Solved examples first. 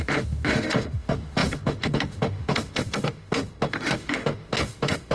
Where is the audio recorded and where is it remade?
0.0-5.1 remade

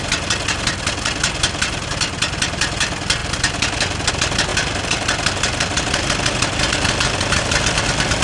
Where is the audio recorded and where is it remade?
0.0-8.2 recorded

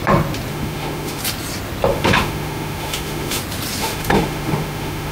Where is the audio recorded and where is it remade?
0.0-0.5 recorded; 0.5-1.2 remade; 1.2-1.9 recorded; 1.9-3.4 remade; 3.4-3.8 recorded; 3.8-5.1 remade

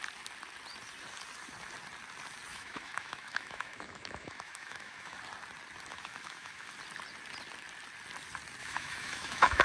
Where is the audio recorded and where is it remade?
0.0-2.5 recorded; 2.5-5.2 remade; 5.2-5.9 recorded; 5.9-6.7 remade; 6.7-8.6 recorded; 8.6-9.6 remade

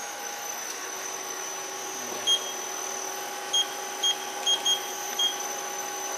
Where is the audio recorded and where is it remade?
0.0-1.4 remade; 1.4-5.1 recorded; 5.1-6.2 remade

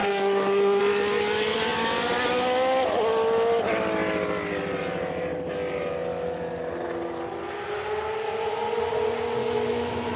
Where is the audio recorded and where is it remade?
0.0-0.8 remade; 0.8-9.4 recorded; 9.4-10.2 remade